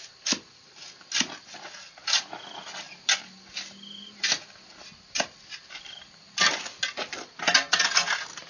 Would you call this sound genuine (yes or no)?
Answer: yes